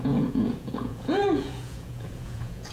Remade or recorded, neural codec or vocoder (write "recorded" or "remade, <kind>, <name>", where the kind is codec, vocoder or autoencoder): remade, vocoder, Vocos